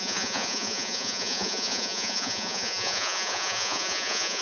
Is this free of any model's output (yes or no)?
no